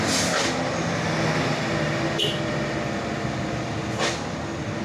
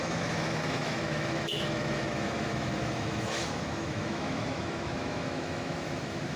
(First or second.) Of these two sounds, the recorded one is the first